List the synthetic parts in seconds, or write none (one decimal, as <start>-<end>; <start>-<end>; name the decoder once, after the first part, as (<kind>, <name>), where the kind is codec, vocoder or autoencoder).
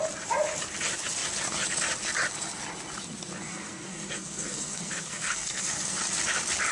3.5-6.0 (codec, SNAC)